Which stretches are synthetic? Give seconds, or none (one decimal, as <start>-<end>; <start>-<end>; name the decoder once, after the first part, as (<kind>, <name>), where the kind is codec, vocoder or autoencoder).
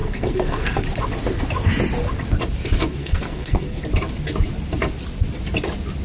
0.0-0.8 (codec, SNAC); 3.0-3.8